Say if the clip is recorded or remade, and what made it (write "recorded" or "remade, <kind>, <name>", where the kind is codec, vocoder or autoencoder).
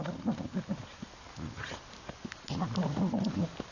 recorded